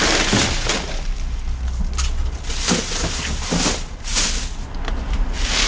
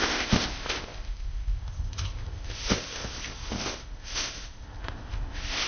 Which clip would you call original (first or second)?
first